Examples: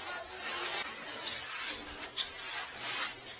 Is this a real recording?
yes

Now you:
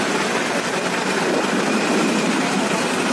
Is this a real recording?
yes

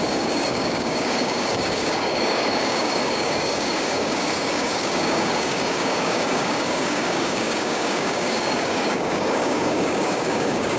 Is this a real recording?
no